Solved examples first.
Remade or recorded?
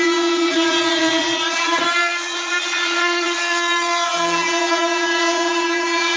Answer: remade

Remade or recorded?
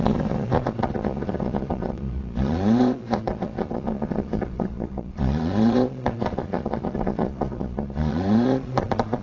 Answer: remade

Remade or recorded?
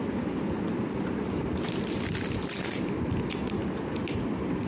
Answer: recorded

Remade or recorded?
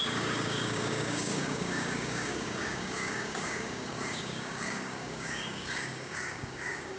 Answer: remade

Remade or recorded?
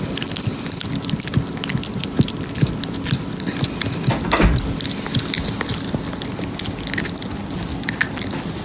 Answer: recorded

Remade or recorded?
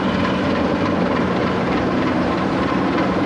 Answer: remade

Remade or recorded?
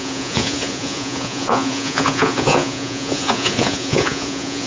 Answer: remade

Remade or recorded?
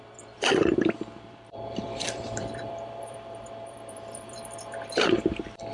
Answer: remade